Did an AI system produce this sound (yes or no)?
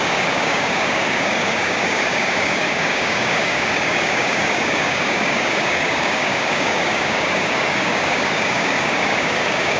yes